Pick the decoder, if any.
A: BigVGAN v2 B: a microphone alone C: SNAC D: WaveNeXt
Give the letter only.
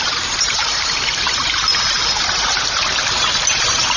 B